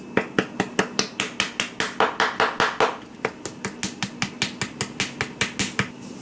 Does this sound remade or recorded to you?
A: recorded